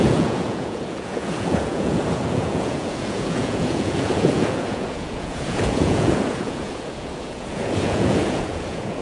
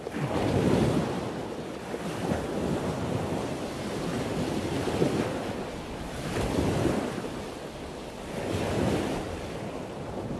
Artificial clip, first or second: first